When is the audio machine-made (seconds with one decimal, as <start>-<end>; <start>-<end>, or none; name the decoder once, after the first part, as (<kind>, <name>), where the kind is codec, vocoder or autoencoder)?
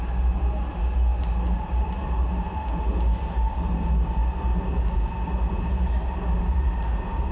none